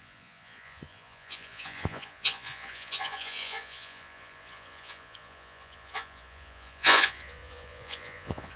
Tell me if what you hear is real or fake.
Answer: fake